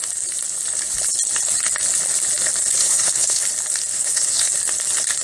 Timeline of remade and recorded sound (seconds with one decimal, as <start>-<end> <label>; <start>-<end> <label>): 0.0-2.8 recorded; 2.8-3.5 remade; 3.5-3.9 recorded; 3.9-4.5 remade; 4.5-5.2 recorded